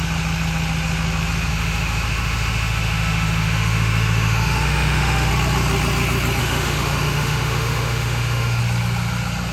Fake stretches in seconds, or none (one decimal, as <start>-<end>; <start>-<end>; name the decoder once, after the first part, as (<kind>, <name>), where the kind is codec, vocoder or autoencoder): 1.5-5.3 (autoencoder, DAC-VAE); 6.4-8.6

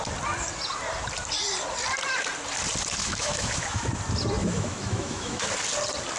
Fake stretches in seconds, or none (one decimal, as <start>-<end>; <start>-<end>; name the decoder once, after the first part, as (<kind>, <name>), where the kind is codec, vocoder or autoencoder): 3.0-3.9 (autoencoder, DAC-VAE); 4.4-5.5